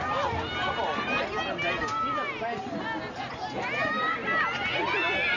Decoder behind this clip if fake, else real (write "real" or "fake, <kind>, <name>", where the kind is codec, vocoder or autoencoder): real